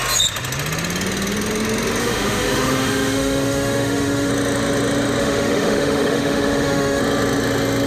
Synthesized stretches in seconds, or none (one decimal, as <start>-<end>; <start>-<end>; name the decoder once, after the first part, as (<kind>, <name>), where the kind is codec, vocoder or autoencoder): 2.0-4.3 (autoencoder, DAC-VAE); 5.2-7.0